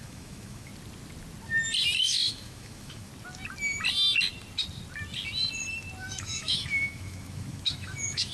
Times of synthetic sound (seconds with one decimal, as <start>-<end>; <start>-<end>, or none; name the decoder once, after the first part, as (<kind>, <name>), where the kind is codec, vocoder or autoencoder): 0.0-0.7 (autoencoder, DAC-VAE); 2.0-3.1; 6.1-8.3